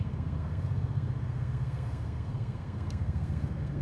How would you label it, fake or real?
fake